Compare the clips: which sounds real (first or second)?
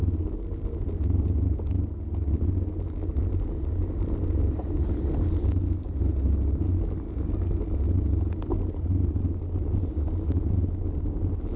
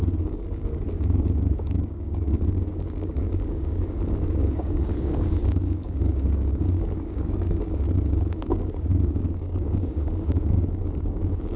first